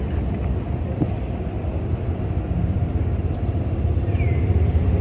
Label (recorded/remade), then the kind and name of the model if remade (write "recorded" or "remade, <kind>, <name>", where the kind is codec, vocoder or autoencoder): recorded